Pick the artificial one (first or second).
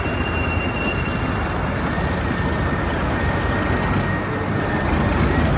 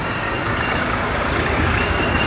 second